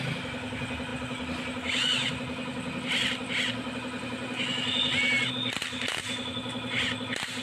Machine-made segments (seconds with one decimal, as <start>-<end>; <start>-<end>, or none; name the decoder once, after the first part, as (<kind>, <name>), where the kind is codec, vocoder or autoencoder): none